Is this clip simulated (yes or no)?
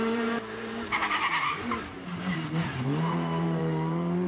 yes